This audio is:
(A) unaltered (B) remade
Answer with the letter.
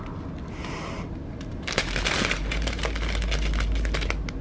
A